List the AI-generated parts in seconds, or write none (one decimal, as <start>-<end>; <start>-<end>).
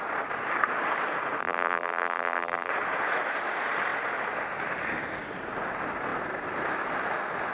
1.4-2.7